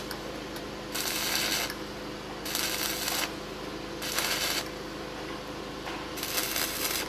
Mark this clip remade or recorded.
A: recorded